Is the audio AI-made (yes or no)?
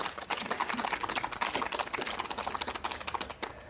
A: no